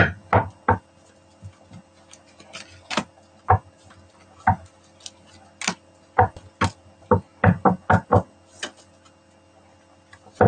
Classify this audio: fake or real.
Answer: real